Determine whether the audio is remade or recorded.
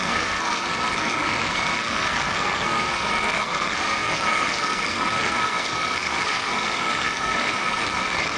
remade